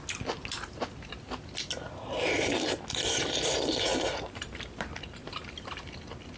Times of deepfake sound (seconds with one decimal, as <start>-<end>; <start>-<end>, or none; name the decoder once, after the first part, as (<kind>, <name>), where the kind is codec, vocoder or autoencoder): 3.9-5.6 (vocoder, BigVGAN v2)